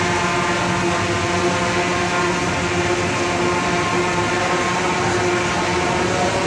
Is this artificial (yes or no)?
no